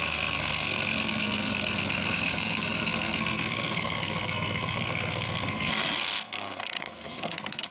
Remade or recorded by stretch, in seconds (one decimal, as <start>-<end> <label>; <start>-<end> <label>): 0.0-7.7 remade